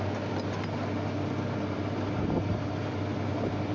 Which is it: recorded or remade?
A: recorded